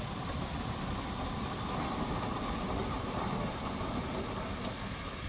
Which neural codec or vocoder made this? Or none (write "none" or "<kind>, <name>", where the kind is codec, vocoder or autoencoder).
none